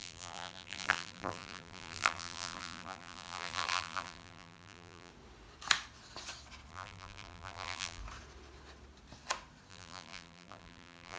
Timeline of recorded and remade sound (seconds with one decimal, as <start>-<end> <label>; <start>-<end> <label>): 0.0-5.1 remade; 5.1-6.7 recorded; 6.7-8.0 remade; 8.0-9.7 recorded; 9.7-11.2 remade